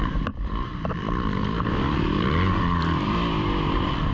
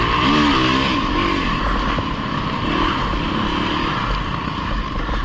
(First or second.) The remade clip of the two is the first